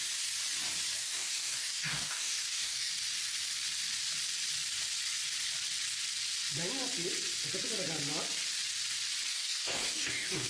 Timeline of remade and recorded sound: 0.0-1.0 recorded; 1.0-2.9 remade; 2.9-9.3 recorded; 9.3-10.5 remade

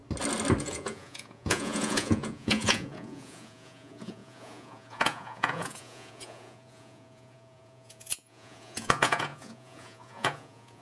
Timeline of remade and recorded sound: 0.0-0.6 recorded; 0.6-10.8 remade

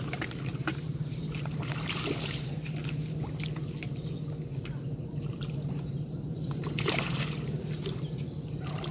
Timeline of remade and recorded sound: 0.0-0.5 recorded; 0.5-2.5 remade; 2.5-5.1 recorded; 5.1-7.0 remade; 7.0-8.9 recorded

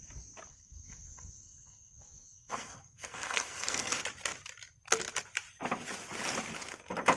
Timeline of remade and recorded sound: 0.0-0.5 recorded; 0.5-3.9 remade; 3.9-7.2 recorded

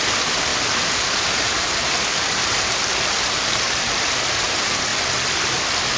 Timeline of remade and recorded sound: 0.0-4.9 remade; 4.9-6.0 recorded